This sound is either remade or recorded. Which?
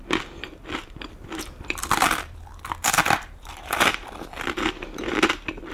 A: remade